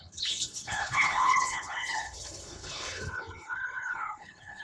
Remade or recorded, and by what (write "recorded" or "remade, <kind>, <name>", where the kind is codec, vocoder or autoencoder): remade, codec, HILCodec